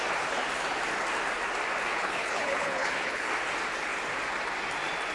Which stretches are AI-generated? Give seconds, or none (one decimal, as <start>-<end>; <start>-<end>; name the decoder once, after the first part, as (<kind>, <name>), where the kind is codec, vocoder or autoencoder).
1.9-3.3 (codec, HILCodec)